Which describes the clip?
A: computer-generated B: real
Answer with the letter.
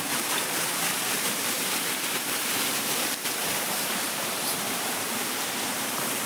A